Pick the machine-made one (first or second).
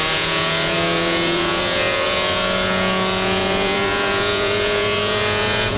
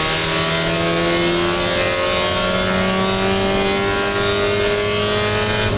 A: first